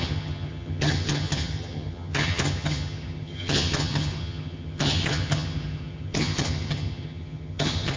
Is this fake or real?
fake